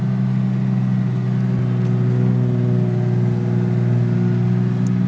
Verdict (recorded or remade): recorded